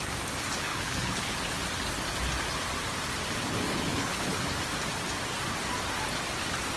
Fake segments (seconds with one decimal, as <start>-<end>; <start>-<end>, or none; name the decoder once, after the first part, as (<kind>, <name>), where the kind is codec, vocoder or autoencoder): 0.7-1.3 (codec, HILCodec); 3.7-4.4